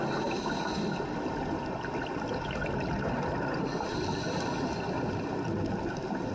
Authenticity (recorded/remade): recorded